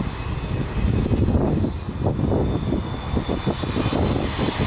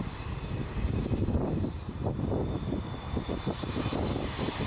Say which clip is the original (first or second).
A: first